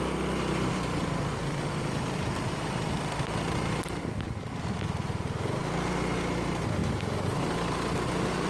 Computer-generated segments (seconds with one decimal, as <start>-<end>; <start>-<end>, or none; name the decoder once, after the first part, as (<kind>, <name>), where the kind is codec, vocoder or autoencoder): 6.8-7.4 (vocoder, BigVGAN v2)